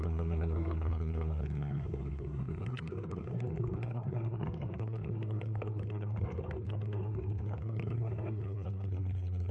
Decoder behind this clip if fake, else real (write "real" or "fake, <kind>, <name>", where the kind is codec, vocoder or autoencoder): fake, codec, SNAC